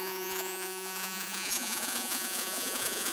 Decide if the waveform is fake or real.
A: fake